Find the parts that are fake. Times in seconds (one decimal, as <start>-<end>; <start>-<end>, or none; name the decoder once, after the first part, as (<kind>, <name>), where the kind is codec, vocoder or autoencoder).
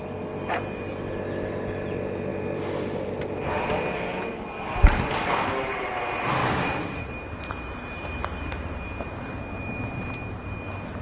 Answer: 6.4-7.0 (codec, DAC)